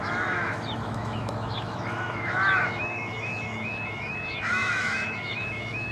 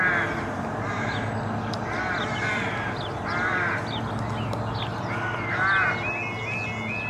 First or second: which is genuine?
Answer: second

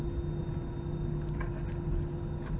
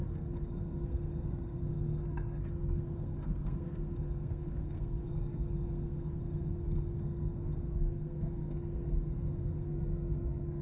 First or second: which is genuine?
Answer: first